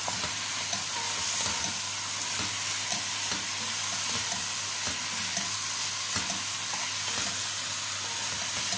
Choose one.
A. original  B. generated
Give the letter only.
A